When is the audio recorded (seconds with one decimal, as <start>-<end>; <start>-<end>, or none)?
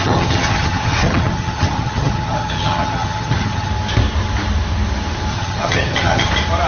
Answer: 3.7-5.3; 6.3-6.7